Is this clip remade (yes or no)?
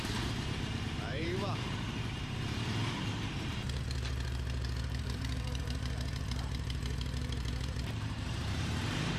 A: yes